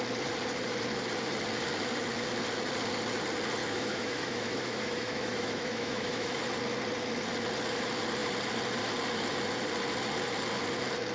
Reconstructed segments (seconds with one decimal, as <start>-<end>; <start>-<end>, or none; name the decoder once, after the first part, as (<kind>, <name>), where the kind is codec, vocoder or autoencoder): 3.6-6.4 (autoencoder, DAC-VAE)